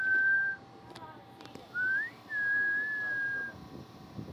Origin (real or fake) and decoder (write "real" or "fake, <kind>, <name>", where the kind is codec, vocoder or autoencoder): real